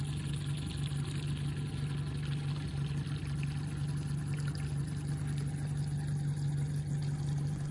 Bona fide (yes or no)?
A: yes